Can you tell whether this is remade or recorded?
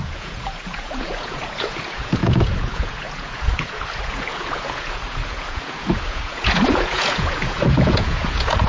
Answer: remade